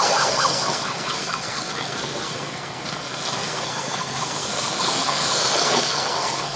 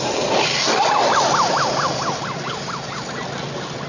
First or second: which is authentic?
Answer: second